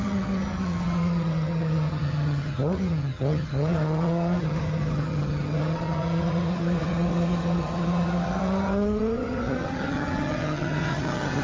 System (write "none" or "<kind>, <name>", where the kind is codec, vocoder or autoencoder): vocoder, HiFi-GAN